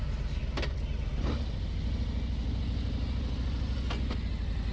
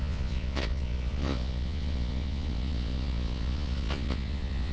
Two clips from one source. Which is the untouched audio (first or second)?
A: first